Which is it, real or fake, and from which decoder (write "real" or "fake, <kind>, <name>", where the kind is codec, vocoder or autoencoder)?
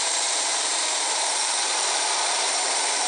fake, vocoder, BigVGAN v2